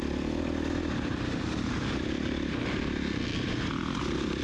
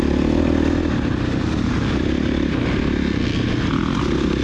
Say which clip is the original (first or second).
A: second